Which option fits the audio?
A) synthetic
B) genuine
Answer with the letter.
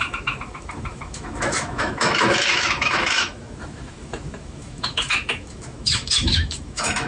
A